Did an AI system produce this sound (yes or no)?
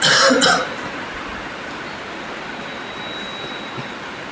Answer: no